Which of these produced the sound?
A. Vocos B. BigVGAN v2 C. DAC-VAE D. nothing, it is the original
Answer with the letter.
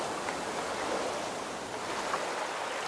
D